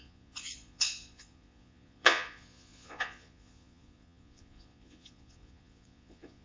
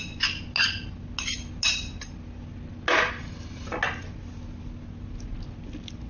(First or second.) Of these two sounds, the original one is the second